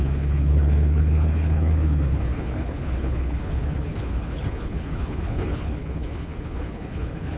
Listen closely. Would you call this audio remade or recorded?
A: remade